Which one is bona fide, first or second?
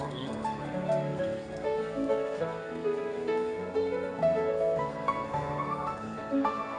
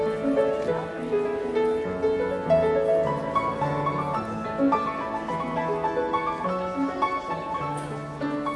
second